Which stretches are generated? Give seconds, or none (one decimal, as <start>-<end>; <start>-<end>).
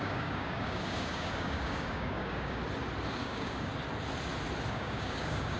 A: 0.0-2.6; 3.2-3.7; 4.7-5.6